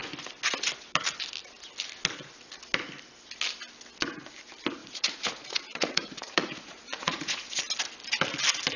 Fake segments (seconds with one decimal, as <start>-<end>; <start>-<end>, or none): 4.8-7.6